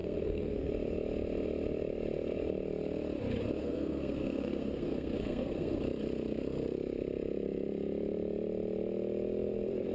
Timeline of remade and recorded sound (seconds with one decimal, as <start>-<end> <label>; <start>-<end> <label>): 0.0-0.7 remade; 0.7-3.6 recorded; 3.6-5.8 remade; 5.8-9.9 recorded